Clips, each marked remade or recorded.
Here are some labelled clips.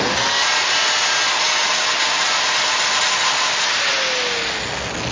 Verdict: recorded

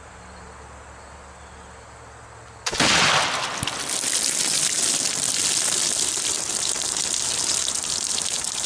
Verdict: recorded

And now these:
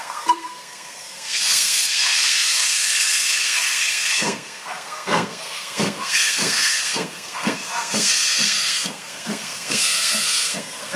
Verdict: remade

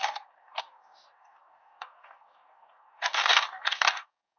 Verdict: remade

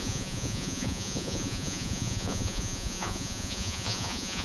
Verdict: remade